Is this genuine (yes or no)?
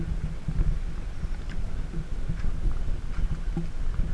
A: yes